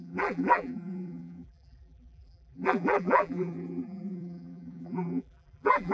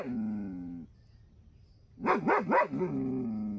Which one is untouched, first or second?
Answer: second